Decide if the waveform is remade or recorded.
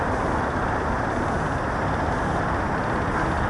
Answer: recorded